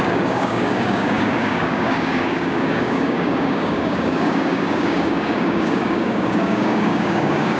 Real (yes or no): no